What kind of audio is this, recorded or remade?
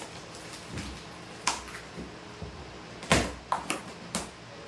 recorded